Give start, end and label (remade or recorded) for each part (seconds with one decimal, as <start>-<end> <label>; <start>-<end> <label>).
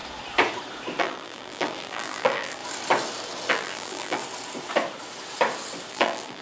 0.0-1.0 recorded; 1.0-2.6 remade; 2.6-3.5 recorded; 3.5-4.2 remade; 4.2-5.9 recorded; 5.9-6.4 remade